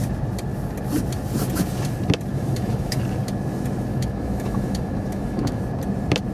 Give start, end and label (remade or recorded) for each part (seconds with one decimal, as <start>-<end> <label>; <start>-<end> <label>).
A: 0.0-2.3 recorded; 2.3-3.0 remade; 3.0-3.9 recorded; 3.9-5.6 remade; 5.6-6.3 recorded